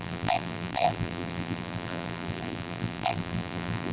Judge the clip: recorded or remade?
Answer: remade